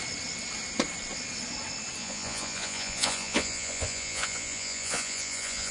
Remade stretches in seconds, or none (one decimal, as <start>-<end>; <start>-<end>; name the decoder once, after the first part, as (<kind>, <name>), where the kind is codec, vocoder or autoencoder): 2.0-5.7 (vocoder, Vocos)